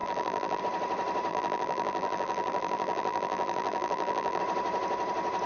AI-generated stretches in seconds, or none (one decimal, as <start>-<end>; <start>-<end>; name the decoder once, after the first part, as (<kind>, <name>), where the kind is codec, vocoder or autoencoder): 0.0-0.6 (vocoder, BigVGAN v2); 1.3-4.4